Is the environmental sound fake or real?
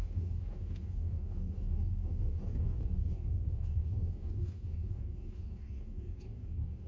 fake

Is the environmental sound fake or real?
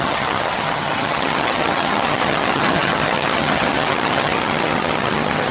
fake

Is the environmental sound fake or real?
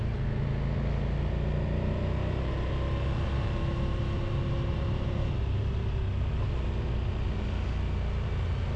real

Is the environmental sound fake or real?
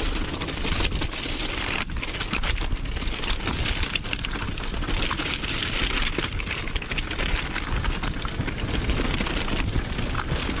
real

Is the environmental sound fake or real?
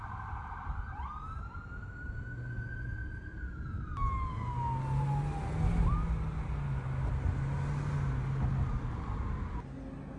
real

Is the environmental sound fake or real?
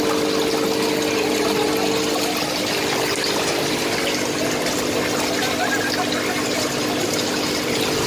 real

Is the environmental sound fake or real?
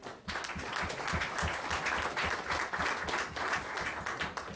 real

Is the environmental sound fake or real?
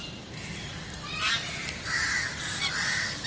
fake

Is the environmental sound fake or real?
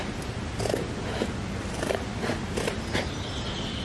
real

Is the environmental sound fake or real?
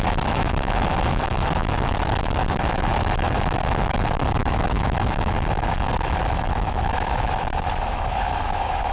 fake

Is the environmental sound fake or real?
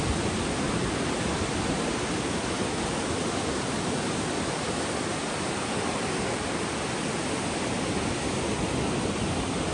real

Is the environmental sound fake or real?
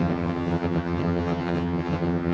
fake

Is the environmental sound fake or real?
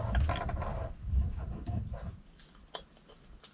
real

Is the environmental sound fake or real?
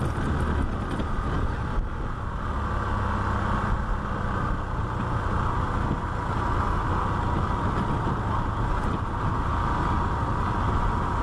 real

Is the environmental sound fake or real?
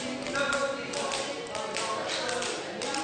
real